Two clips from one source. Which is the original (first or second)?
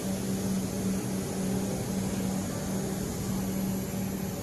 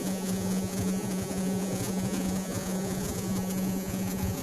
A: first